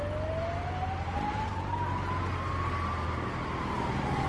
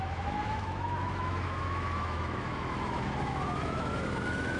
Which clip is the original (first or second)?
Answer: first